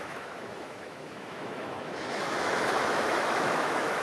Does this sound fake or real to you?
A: fake